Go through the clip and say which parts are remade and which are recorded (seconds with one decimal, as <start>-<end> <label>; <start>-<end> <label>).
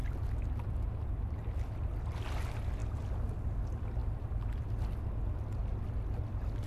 0.0-6.7 recorded